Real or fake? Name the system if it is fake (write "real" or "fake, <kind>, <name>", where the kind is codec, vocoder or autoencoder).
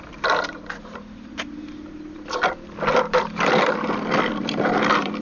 fake, vocoder, BigVGAN v2